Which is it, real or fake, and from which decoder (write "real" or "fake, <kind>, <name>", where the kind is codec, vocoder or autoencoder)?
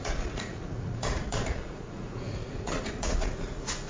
fake, vocoder, Vocos